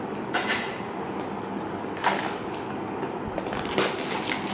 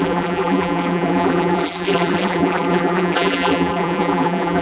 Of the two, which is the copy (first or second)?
second